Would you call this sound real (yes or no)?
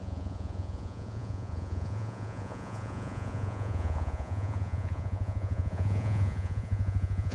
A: no